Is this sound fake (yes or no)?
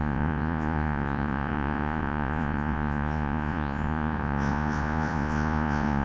yes